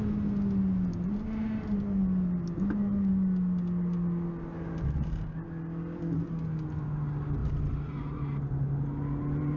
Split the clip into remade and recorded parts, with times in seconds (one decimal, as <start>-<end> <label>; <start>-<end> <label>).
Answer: 0.0-9.6 recorded

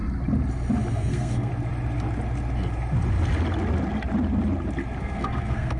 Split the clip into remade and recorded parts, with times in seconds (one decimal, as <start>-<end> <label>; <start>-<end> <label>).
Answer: 0.0-0.9 recorded; 0.9-1.5 remade; 1.5-5.0 recorded; 5.0-5.8 remade